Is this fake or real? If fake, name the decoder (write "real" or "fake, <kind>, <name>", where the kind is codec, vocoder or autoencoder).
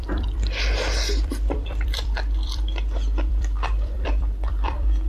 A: fake, vocoder, BigVGAN v2